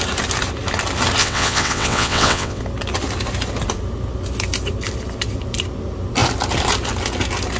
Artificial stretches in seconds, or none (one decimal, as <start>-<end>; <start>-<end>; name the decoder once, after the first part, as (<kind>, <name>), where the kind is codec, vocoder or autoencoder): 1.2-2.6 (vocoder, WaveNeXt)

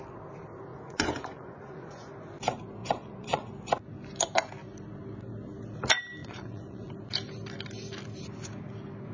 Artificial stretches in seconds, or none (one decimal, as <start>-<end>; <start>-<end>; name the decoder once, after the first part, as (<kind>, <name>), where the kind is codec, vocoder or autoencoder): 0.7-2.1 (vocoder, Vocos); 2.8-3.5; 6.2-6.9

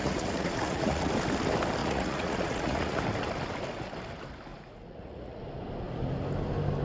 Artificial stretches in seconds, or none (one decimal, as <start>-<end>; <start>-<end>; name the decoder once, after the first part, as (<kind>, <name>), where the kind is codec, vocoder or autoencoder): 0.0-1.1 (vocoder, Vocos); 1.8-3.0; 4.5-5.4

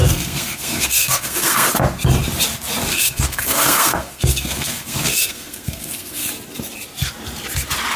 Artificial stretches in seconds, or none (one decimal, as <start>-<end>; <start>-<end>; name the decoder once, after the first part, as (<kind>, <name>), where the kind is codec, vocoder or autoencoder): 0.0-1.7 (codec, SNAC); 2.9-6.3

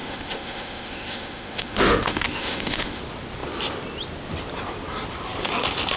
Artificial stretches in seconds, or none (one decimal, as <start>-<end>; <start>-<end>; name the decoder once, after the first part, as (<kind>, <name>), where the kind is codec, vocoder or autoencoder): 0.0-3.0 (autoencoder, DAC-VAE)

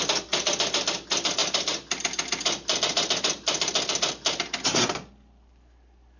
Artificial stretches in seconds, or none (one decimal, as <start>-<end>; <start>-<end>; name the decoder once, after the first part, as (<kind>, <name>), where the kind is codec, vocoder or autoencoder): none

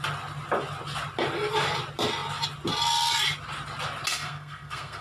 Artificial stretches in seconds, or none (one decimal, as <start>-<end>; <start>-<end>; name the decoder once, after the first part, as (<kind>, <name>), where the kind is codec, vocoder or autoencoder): 4.1-5.0 (codec, SNAC)

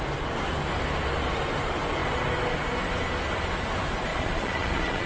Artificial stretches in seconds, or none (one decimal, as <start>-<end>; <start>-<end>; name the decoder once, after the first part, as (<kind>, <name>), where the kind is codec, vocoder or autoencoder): 4.1-5.1 (vocoder, Vocos)